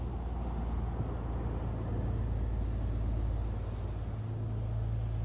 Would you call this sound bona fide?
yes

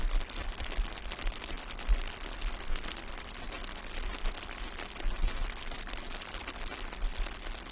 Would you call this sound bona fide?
yes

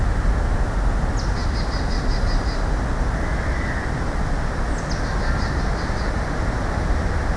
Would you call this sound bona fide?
yes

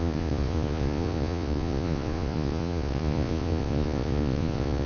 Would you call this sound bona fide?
no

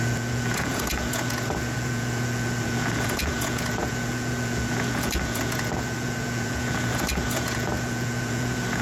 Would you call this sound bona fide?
no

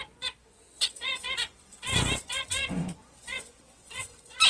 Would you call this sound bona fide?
no